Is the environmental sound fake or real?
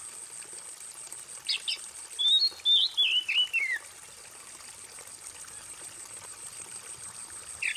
real